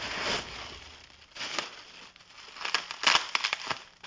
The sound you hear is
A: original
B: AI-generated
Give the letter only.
A